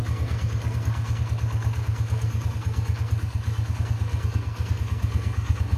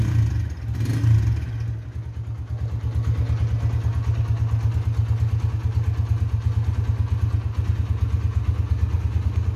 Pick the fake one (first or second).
first